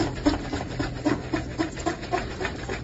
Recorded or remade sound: recorded